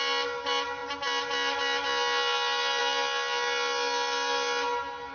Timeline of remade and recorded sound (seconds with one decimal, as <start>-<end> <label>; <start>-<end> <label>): 0.0-5.1 recorded